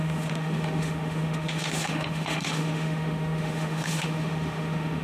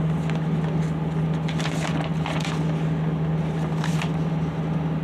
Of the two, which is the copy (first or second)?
first